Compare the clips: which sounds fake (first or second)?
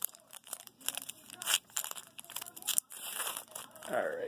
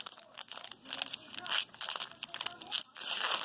first